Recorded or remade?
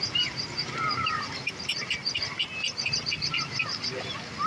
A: recorded